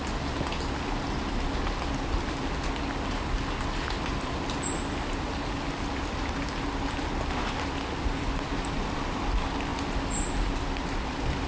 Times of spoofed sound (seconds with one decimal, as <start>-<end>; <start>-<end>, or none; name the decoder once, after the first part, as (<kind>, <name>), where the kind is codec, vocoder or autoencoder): none